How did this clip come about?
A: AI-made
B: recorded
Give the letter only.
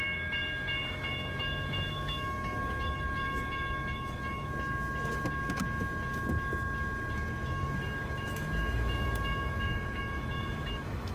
A